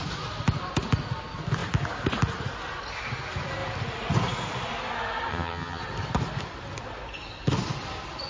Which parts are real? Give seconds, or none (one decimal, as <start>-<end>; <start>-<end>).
0.0-5.3; 5.8-8.3